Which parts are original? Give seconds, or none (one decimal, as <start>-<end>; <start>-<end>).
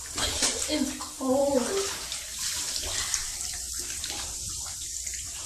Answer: 0.0-2.3